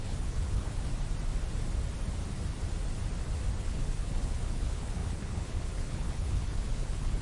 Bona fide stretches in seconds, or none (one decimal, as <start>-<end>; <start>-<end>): 0.9-3.6